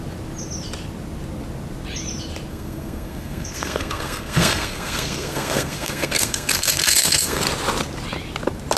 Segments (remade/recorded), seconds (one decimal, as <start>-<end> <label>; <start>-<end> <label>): 0.0-2.5 recorded; 2.5-7.4 remade; 7.4-8.8 recorded